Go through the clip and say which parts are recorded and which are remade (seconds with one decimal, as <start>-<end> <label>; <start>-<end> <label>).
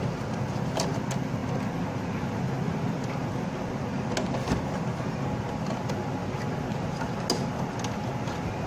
0.0-8.7 recorded